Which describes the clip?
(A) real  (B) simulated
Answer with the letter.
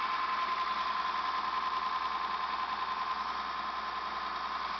A